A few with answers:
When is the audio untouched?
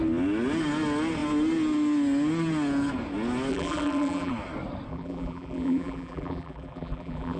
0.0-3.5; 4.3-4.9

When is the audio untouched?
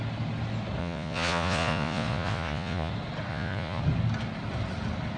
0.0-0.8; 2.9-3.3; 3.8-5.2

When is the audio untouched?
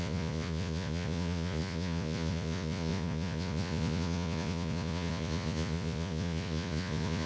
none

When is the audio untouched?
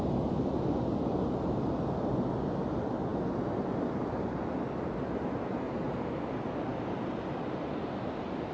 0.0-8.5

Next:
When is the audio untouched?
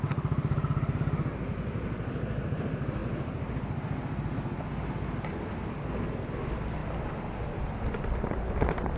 0.0-9.0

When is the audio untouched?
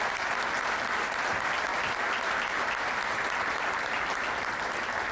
0.0-5.1